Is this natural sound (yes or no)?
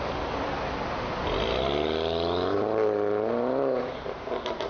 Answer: yes